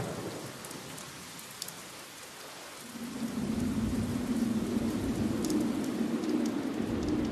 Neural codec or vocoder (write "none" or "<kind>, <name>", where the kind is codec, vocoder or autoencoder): none